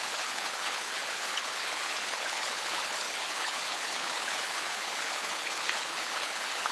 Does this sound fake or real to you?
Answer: fake